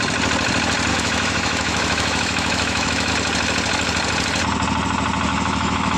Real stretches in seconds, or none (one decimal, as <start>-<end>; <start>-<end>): 0.0-0.9; 3.1-5.3